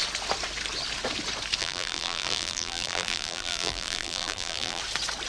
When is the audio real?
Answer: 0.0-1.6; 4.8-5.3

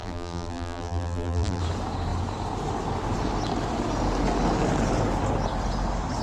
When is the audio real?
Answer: 1.6-6.2

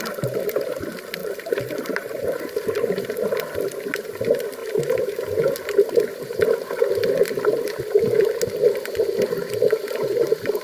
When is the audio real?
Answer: 0.0-1.2; 2.9-4.6; 5.5-10.6

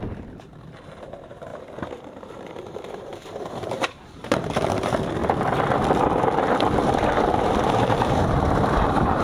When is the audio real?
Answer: 5.2-6.8

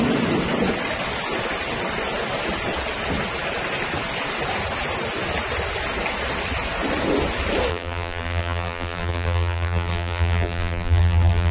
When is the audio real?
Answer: 0.0-7.7

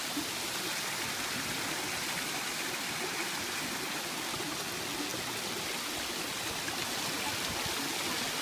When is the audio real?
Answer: 0.0-8.4

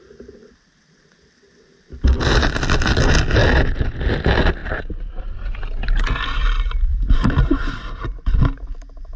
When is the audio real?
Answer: 0.0-6.9; 7.8-9.2